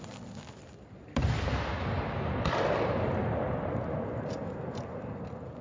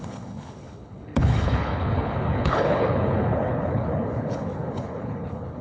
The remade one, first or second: second